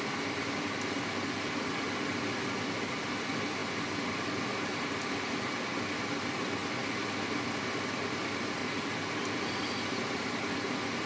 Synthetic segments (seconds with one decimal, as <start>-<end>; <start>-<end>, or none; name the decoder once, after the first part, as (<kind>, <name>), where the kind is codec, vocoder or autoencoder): 0.0-6.6 (vocoder, BigVGAN v2); 7.2-8.6; 9.4-11.1